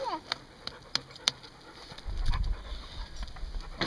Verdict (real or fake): real